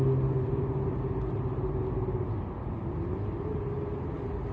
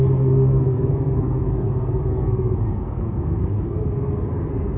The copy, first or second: second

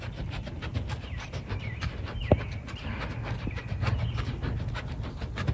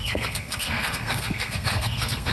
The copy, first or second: second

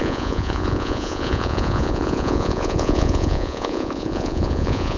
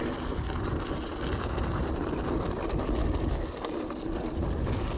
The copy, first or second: first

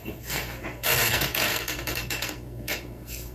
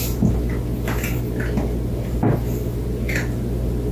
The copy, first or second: first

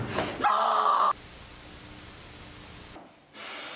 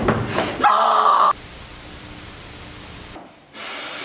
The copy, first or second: second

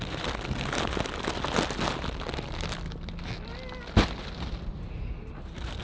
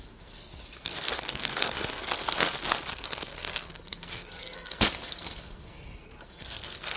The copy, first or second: second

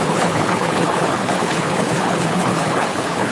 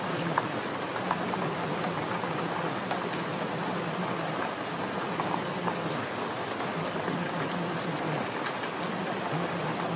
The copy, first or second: first